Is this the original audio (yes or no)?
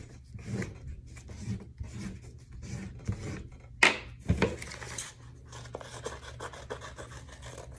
yes